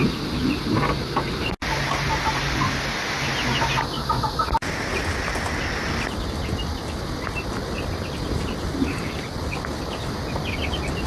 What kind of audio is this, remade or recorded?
recorded